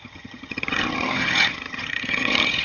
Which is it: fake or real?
fake